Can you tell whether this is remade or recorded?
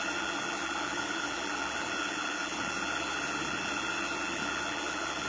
remade